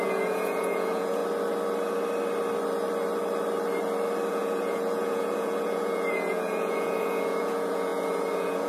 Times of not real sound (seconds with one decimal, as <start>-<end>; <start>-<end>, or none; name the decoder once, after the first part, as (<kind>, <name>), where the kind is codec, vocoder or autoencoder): 0.0-1.2 (vocoder, Vocos); 4.3-8.7

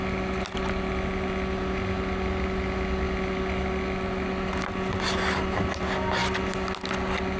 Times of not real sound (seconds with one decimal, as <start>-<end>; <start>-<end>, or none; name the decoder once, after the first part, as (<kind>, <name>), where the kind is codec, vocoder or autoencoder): none

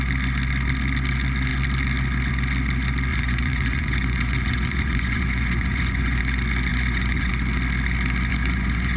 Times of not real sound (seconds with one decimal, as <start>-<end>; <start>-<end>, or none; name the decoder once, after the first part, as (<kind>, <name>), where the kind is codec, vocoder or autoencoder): 3.1-6.2 (vocoder, Vocos); 6.7-7.3; 8.3-9.0

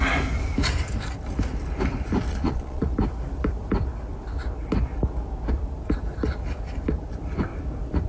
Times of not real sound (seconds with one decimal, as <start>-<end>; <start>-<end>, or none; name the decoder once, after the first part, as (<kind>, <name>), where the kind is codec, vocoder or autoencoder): 2.3-2.9 (vocoder, Vocos)

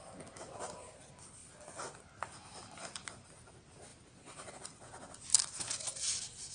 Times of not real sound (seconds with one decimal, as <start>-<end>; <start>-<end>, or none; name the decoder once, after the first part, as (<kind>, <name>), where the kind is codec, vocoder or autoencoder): none

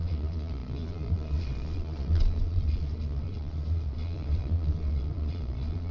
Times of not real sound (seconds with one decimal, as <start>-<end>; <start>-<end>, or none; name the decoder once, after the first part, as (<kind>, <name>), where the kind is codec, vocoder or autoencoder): 0.0-5.9 (vocoder, Vocos)

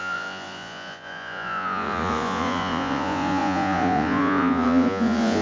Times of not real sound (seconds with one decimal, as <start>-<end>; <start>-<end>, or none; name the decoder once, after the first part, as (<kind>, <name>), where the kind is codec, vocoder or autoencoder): 0.0-5.4 (vocoder, Vocos)